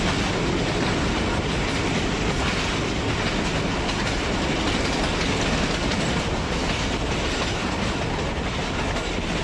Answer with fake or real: real